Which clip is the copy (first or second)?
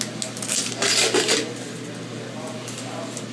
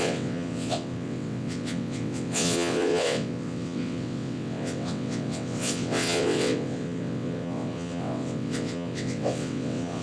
second